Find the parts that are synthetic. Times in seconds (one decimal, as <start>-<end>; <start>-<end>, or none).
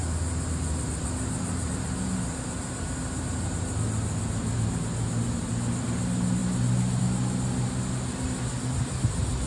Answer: none